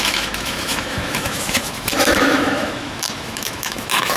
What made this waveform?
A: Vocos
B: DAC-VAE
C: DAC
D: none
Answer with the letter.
B